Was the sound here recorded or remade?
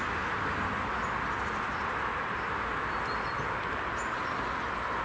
recorded